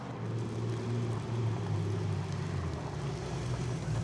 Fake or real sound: real